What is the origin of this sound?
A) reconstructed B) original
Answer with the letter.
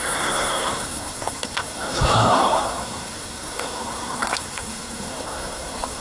A